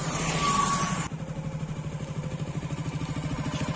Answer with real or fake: real